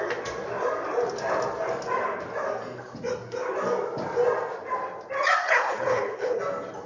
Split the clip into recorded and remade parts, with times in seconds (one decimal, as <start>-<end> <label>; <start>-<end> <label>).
0.0-5.4 recorded; 5.4-6.4 remade; 6.4-6.9 recorded